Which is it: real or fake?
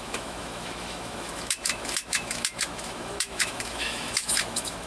fake